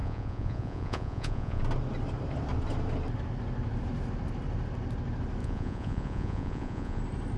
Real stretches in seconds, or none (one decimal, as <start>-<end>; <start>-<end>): 1.6-5.4; 7.0-7.4